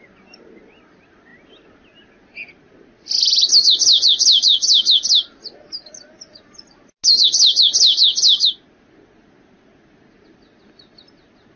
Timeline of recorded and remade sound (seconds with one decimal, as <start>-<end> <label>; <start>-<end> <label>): 0.0-11.6 recorded